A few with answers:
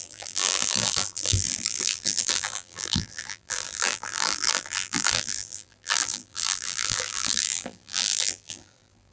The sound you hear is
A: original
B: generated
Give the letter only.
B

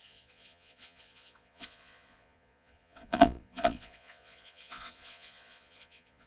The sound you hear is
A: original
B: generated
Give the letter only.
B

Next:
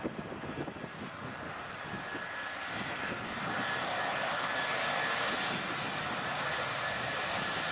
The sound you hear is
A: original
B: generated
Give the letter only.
A